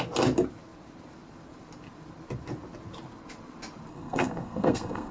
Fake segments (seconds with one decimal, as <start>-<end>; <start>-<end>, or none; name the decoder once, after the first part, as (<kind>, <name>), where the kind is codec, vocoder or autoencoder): 3.9-5.1 (codec, SNAC)